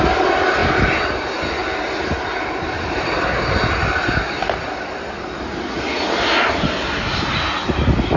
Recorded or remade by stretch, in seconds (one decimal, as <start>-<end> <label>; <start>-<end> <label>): 0.0-8.2 recorded